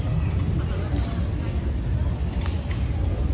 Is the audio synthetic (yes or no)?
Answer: no